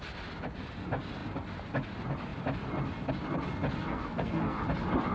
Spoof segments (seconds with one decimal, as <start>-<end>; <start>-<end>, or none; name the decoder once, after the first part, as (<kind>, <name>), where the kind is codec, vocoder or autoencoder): 3.8-4.6 (codec, SNAC)